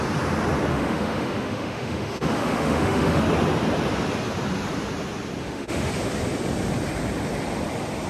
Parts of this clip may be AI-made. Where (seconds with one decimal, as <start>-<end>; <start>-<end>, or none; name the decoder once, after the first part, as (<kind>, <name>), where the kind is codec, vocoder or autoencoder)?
0.7-3.2 (autoencoder, DAC-VAE); 5.4-5.9

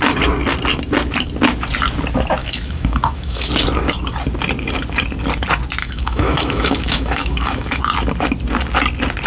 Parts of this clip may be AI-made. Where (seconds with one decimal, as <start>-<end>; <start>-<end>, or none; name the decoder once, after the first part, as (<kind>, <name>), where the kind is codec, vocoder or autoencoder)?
2.4-3.5 (autoencoder, DAC-VAE); 5.8-7.8